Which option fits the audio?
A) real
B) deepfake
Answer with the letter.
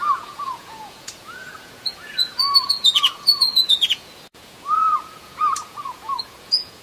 B